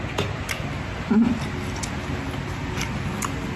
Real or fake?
real